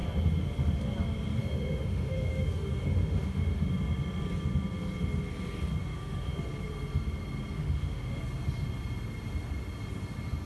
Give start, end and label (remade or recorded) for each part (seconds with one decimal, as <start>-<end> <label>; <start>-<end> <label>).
0.0-1.4 recorded; 1.4-3.7 remade; 3.7-5.8 recorded; 5.8-6.4 remade; 6.4-7.6 recorded; 7.6-8.2 remade; 8.2-10.5 recorded